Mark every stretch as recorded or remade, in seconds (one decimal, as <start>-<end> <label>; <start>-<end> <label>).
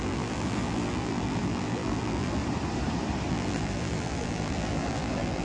0.0-2.4 remade; 2.4-3.3 recorded; 3.3-5.4 remade